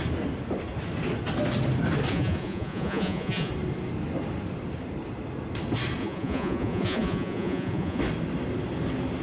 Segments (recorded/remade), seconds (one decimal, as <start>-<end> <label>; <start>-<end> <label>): 0.0-2.1 recorded; 2.1-3.5 remade; 3.5-6.0 recorded; 6.0-8.0 remade; 8.0-9.2 recorded